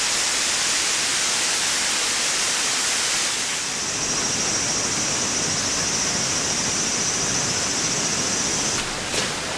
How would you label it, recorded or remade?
recorded